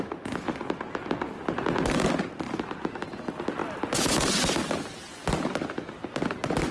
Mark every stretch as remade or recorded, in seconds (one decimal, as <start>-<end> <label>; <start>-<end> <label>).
0.0-6.7 recorded